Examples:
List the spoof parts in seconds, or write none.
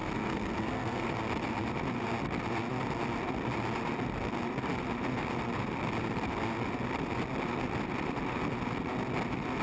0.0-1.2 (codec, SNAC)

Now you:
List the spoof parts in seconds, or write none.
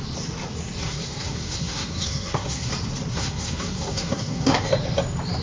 0.8-2.7 (codec, SNAC); 3.1-4.6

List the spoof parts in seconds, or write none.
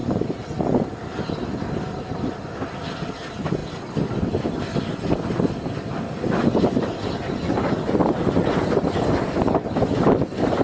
none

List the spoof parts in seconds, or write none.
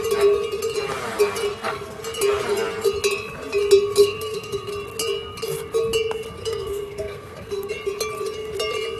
1.5-2.0 (codec, SNAC); 4.0-4.7; 6.4-7.7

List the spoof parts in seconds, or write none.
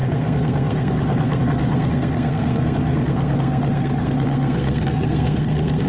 0.0-5.9 (codec, SNAC)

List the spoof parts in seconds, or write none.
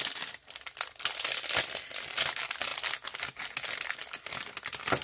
none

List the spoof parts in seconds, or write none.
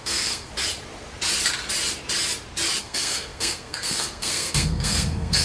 0.0-0.5 (codec, SNAC); 2.8-5.4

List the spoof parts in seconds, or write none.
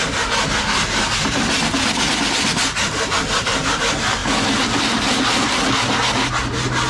none